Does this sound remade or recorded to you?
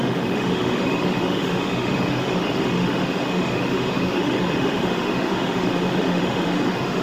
remade